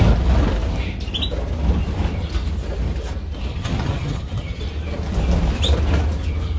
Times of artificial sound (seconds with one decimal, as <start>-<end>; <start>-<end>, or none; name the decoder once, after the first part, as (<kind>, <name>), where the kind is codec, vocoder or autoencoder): 3.5-4.6 (vocoder, HiFi-GAN)